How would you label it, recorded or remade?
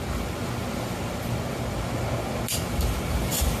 recorded